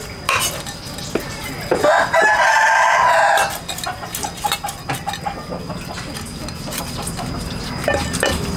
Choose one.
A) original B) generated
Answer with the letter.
A